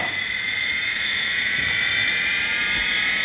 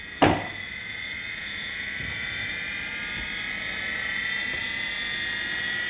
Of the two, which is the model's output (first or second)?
first